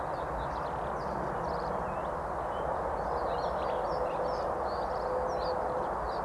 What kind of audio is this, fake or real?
real